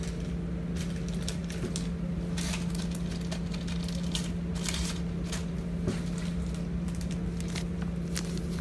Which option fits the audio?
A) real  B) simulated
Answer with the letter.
A